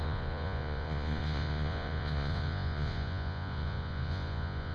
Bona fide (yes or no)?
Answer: no